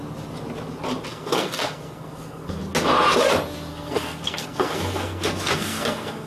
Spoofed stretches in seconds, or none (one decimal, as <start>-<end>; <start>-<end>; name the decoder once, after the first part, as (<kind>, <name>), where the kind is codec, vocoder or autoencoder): 1.1-2.6 (codec, SNAC); 3.7-6.3